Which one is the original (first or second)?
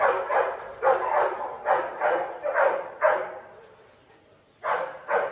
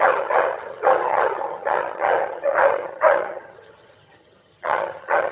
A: first